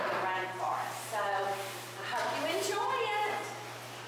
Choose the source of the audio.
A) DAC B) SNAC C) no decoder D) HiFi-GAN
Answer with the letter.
C